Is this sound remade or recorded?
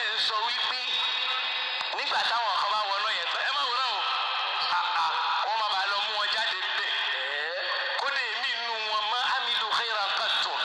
recorded